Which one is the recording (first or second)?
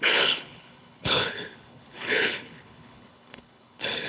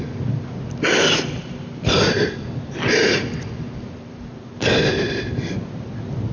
second